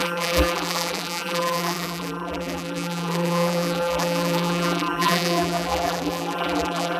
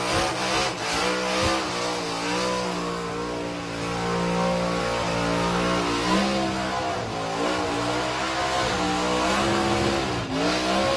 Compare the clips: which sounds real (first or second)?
second